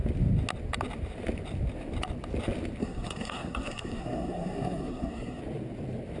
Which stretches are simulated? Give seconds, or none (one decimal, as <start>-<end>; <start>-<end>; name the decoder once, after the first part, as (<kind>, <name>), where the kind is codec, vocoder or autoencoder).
2.8-5.4 (codec, SNAC)